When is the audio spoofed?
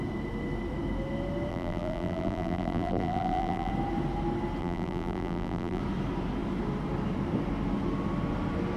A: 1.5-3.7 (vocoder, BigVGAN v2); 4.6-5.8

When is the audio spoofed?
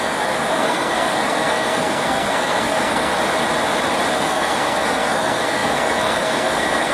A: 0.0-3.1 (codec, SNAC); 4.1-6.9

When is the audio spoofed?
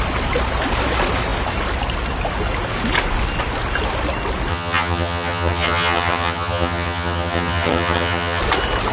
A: 4.5-8.4 (vocoder, HiFi-GAN)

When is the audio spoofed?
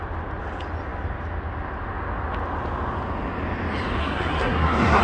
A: 4.0-5.0 (codec, SNAC)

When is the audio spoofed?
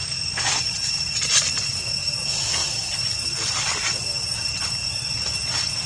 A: 0.0-0.6 (vocoder, BigVGAN v2); 1.7-2.2; 2.6-4.9